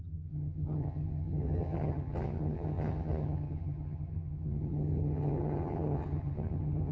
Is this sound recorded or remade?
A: remade